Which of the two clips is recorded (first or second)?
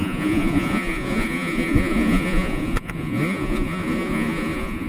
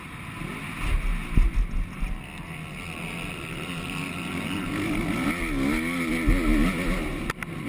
second